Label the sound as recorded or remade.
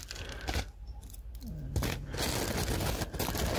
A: recorded